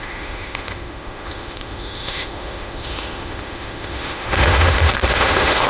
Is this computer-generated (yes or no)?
yes